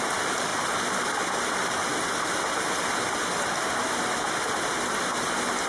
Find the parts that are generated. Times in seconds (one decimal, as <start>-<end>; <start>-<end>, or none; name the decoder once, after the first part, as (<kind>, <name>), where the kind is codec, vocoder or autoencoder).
none